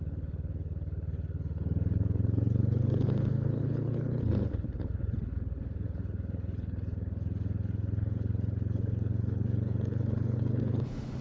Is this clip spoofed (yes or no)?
yes